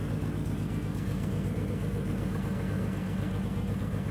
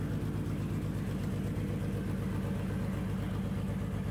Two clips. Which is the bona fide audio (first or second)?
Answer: second